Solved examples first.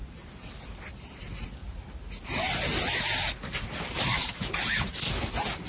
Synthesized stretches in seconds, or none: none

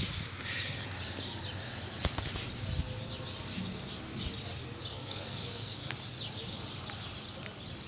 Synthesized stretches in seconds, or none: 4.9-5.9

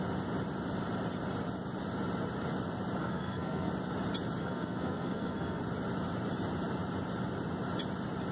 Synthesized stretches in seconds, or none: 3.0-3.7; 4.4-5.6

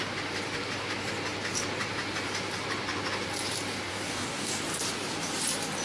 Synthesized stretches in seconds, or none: 3.9-4.5

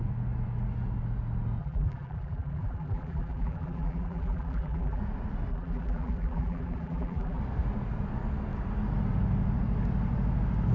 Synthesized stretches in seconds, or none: 1.6-5.0; 5.5-7.4